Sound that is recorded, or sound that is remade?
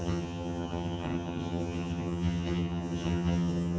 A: remade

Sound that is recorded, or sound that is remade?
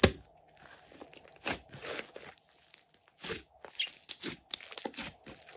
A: recorded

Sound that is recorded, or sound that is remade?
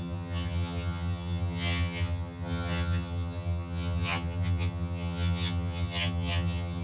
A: remade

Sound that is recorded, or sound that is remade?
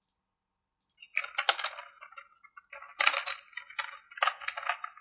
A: recorded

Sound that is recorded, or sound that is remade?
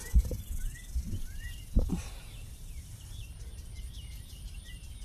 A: remade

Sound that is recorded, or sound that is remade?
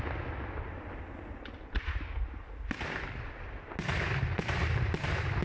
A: recorded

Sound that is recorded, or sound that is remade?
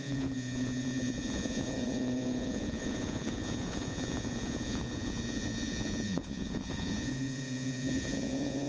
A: remade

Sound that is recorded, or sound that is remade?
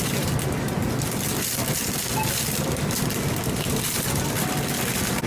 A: recorded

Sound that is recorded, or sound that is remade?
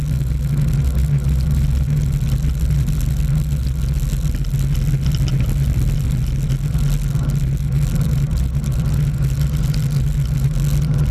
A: recorded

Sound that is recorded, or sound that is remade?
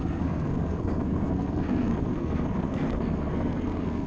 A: remade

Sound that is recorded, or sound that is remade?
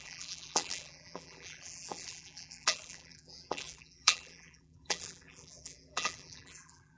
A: remade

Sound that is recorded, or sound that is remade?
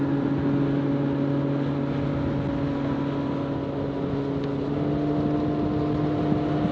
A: recorded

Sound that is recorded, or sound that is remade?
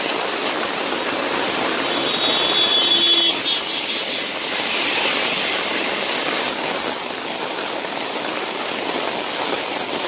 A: recorded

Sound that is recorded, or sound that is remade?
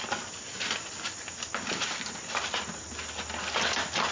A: recorded